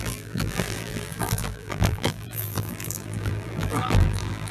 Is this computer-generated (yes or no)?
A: yes